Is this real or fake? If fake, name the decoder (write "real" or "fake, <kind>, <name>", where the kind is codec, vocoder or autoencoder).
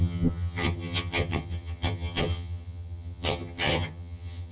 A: fake, vocoder, HiFi-GAN